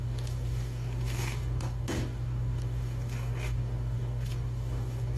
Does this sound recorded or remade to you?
remade